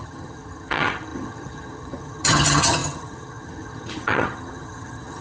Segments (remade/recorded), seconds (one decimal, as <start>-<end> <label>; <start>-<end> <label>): 0.0-5.2 remade